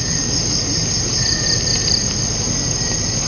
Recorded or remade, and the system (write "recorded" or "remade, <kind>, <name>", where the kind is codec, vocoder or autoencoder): recorded